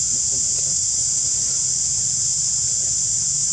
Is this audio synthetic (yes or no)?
no